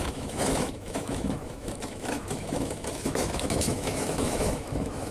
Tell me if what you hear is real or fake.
fake